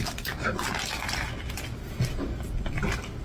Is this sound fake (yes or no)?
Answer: no